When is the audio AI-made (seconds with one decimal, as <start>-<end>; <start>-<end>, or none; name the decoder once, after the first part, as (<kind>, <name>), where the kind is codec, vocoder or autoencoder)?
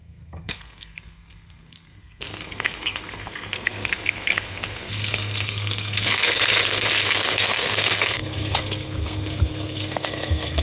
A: 0.0-10.6 (codec, SNAC)